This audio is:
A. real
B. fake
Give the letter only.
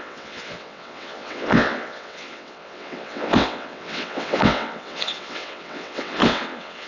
B